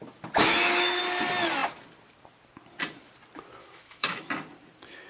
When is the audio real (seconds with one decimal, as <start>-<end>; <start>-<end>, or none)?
0.0-0.4; 1.0-3.6; 4.3-5.1